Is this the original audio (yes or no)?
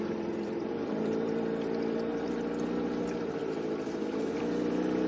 yes